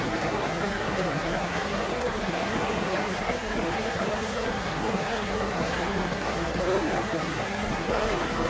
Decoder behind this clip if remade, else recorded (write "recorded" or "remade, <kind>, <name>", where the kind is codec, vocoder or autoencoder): remade, codec, SNAC